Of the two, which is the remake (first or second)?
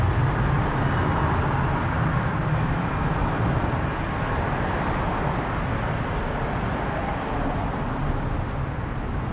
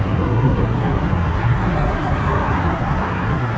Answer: second